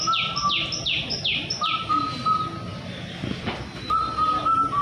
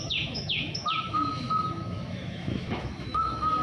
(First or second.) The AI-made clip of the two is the second